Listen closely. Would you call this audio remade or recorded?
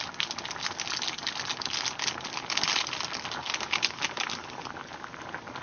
recorded